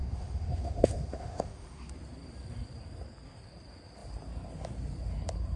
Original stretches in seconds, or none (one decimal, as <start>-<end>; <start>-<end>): 1.9-5.6